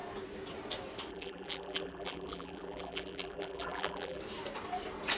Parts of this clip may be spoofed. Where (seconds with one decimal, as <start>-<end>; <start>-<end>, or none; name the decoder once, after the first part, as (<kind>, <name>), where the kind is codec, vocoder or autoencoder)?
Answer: 1.1-4.2 (vocoder, BigVGAN v2)